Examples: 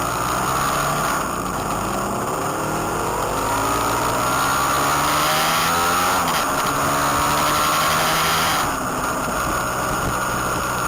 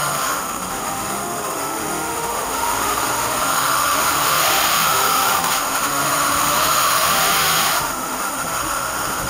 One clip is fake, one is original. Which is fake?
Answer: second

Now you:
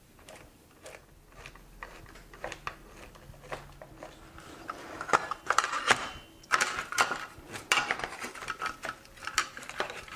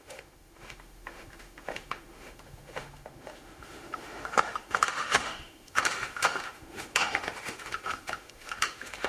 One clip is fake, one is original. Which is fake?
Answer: second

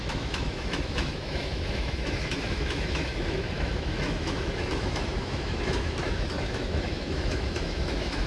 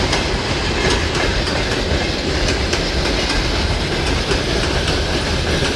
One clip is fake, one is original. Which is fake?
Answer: first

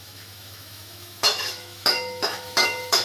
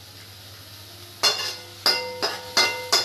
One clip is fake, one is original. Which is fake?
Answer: first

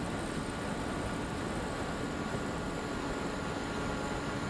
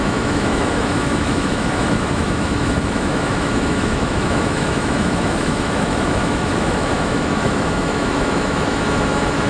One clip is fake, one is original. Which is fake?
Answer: second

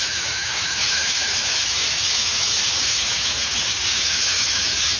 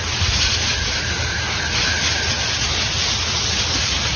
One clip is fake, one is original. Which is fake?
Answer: first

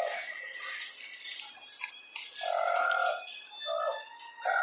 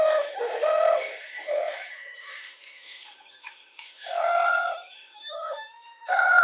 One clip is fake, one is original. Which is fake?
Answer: second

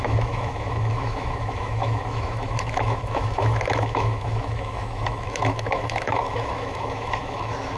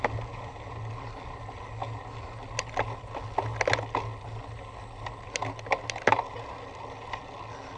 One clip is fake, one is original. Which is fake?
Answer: first